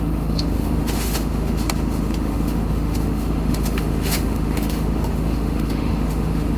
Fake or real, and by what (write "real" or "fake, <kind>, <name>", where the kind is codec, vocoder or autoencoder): fake, autoencoder, DAC-VAE